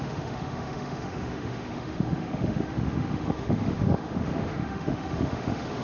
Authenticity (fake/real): fake